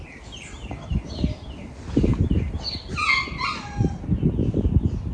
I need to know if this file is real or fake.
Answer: real